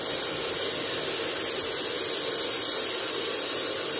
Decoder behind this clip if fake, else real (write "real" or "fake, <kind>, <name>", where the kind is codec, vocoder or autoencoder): real